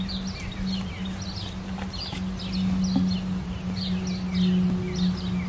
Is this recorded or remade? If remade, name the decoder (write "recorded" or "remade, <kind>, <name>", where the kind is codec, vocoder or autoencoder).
recorded